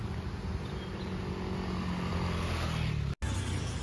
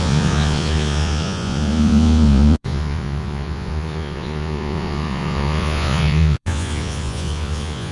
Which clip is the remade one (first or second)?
second